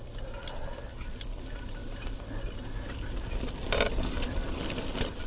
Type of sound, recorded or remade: recorded